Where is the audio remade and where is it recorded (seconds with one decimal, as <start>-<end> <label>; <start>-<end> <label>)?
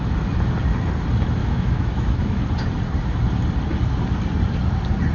0.0-1.4 recorded; 1.4-2.4 remade; 2.4-5.1 recorded